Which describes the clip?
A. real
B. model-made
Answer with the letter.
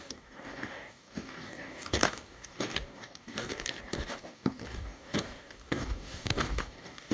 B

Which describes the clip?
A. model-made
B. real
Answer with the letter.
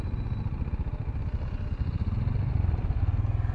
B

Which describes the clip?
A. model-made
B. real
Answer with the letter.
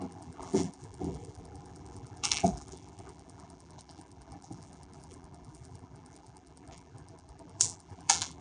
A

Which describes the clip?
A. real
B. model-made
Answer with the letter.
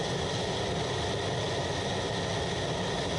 A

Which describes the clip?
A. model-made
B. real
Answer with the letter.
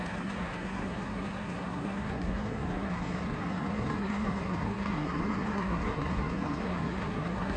A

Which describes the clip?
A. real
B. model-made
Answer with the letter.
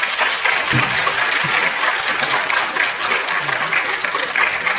A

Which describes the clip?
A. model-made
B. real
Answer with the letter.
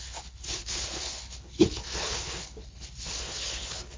A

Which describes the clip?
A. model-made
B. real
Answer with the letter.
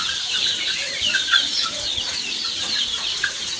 A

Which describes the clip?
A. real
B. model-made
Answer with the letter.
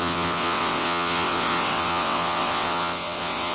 B